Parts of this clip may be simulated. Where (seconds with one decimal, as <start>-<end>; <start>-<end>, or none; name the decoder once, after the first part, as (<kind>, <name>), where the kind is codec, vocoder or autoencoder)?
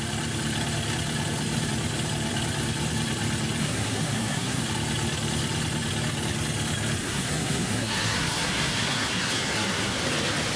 3.6-4.6 (codec, SNAC); 7.0-10.0